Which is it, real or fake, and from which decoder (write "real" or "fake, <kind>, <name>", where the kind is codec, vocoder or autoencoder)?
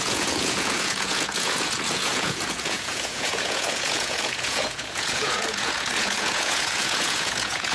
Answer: fake, vocoder, Vocos